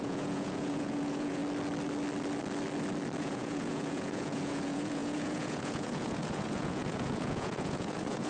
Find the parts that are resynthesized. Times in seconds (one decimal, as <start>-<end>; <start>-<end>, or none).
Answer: 0.0-1.4; 3.2-8.3